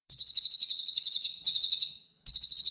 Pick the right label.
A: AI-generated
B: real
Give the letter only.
A